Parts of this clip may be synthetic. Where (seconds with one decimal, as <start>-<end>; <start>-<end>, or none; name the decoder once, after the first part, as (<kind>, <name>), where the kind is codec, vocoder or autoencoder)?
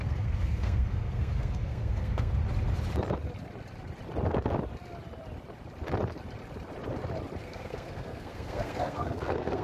0.0-2.3 (codec, SNAC); 7.4-9.6